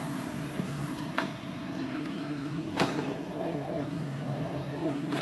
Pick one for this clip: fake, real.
fake